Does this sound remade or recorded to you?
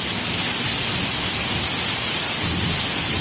recorded